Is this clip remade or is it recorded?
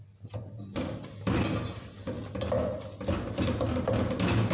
recorded